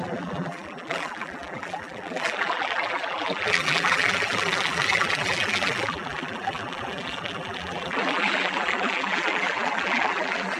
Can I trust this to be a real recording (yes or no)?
no